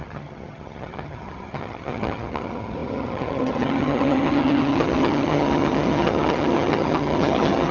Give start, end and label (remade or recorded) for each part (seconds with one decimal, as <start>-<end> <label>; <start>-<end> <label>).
0.0-7.7 remade